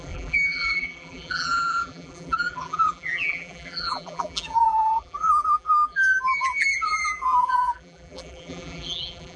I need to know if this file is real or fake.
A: fake